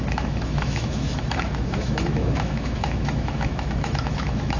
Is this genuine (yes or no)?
no